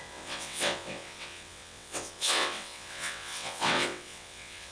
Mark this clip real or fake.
fake